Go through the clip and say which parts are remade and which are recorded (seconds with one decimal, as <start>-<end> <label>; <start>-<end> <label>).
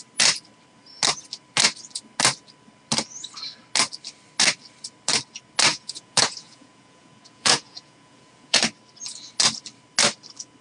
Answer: 0.0-5.7 recorded; 5.7-8.6 remade; 8.6-10.6 recorded